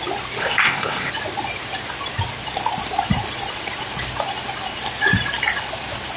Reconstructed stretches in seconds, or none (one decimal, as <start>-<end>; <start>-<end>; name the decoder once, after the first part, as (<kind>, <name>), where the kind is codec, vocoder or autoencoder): 0.4-1.1 (codec, ZipCodec)